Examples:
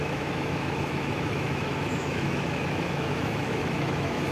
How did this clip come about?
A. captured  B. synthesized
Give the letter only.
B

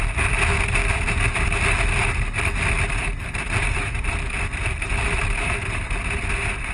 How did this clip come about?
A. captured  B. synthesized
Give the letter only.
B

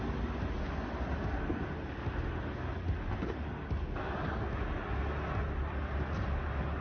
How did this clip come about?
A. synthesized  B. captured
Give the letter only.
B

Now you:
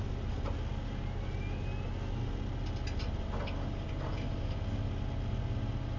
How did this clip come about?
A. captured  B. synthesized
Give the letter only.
A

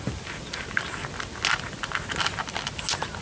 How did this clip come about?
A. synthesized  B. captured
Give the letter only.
B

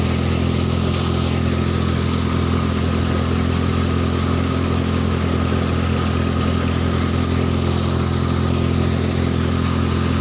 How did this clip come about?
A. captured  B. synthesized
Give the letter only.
A